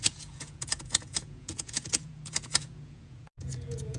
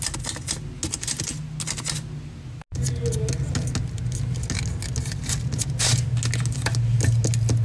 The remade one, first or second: first